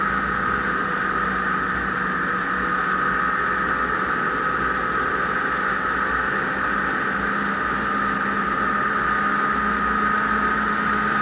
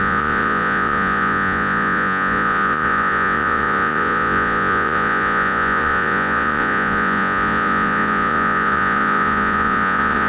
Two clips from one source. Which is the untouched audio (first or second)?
first